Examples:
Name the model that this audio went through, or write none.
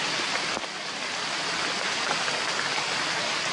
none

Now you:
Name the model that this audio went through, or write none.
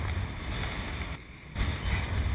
none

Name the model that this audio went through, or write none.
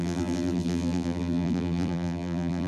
vocoder, BigVGAN v2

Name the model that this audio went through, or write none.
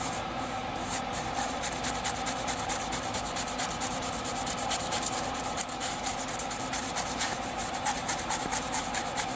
vocoder, BigVGAN v2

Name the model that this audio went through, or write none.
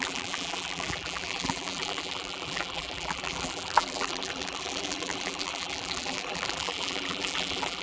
vocoder, BigVGAN v2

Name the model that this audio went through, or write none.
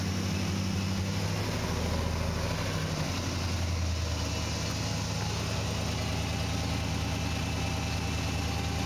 none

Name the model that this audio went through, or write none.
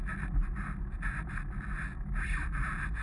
none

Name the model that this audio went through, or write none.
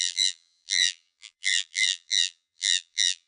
vocoder, BigVGAN v2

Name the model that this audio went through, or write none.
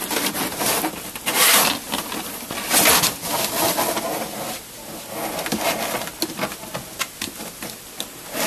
none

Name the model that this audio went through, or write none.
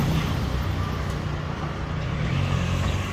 none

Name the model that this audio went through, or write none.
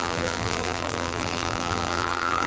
vocoder, BigVGAN v2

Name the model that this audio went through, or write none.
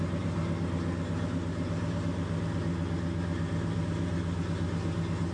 none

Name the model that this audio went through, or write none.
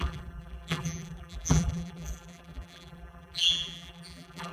vocoder, BigVGAN v2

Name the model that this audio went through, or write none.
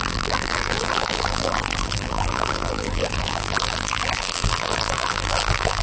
vocoder, BigVGAN v2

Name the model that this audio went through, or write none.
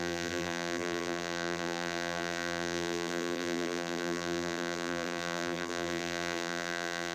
vocoder, BigVGAN v2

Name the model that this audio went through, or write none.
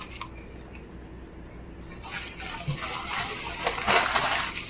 vocoder, BigVGAN v2